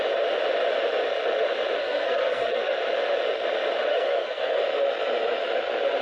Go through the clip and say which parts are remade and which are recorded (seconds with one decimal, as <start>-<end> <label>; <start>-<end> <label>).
0.0-1.8 recorded; 1.8-2.8 remade; 2.8-3.9 recorded; 3.9-4.6 remade; 4.6-6.0 recorded